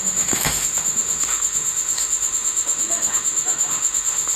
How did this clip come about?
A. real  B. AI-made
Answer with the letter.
B